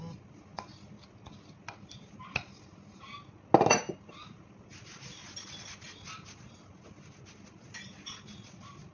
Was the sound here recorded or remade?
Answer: recorded